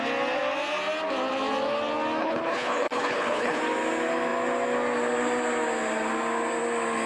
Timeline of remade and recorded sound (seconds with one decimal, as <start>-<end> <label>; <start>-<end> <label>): 0.0-2.2 recorded; 2.2-3.6 remade; 3.6-7.1 recorded